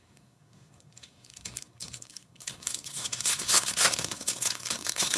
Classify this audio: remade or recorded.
remade